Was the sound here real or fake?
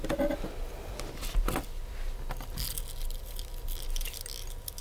real